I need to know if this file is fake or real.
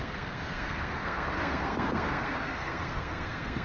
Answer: fake